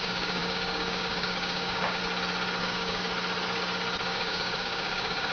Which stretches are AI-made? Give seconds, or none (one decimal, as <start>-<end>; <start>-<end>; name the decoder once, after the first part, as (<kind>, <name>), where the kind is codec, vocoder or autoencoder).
0.0-2.0 (codec, DAC); 2.6-3.0; 4.1-5.3